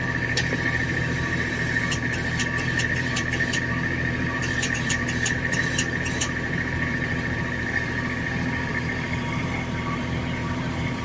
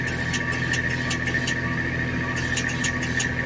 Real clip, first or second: second